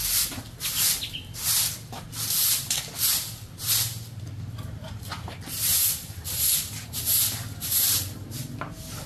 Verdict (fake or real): real